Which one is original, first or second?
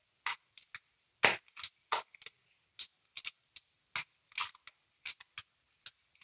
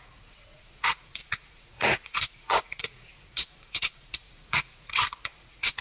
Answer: first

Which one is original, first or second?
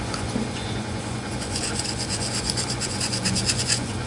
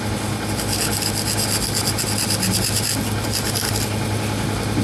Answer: second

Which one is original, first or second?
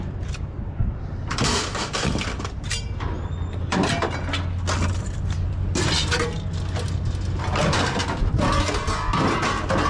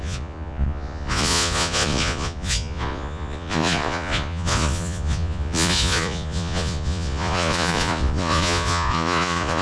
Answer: first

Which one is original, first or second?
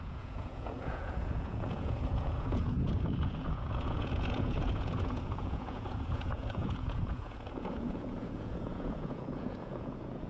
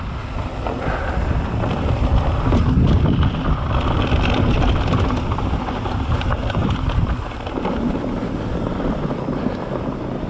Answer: second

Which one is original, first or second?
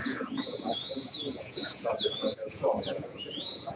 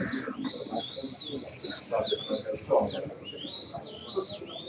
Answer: second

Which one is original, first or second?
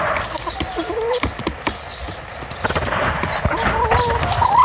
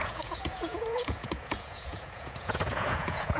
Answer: first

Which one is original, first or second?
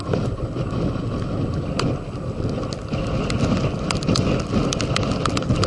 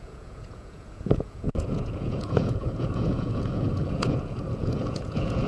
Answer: first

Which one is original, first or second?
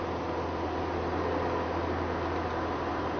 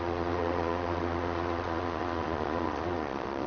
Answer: first